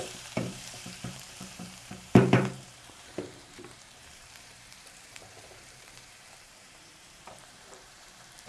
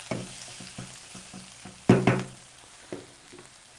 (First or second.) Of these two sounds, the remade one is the first